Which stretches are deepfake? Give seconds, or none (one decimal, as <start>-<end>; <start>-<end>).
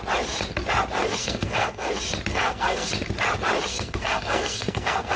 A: 1.2-1.9; 2.3-2.9; 3.7-5.2